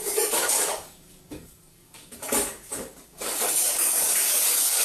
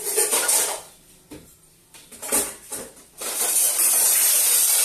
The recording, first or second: second